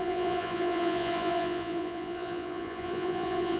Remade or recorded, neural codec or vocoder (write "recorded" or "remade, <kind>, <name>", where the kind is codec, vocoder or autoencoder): remade, vocoder, Vocos